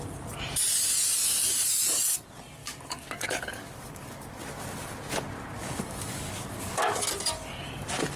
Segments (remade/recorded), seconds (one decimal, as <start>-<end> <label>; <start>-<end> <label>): 0.0-2.6 recorded; 2.6-4.4 remade; 4.4-5.6 recorded; 5.6-7.1 remade; 7.1-8.2 recorded